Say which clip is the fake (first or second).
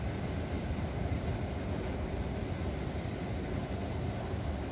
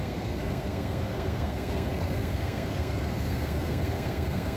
second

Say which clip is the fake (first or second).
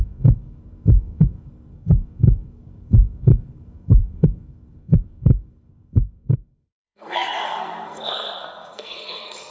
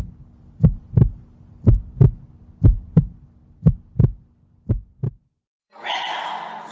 first